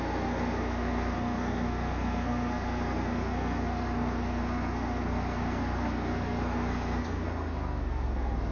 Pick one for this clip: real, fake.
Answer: fake